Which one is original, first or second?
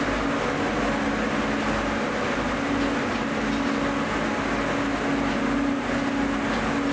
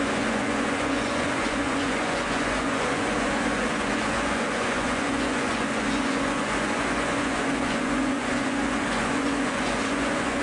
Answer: first